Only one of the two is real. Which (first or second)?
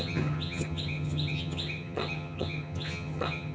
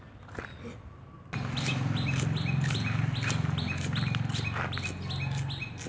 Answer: second